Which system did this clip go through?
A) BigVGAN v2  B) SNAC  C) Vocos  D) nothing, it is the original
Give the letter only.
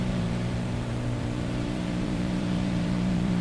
A